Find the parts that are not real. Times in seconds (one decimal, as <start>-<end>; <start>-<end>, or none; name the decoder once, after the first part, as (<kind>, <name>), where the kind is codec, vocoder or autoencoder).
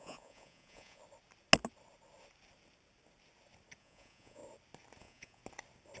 0.0-1.0 (vocoder, Vocos); 3.8-4.4; 5.0-5.4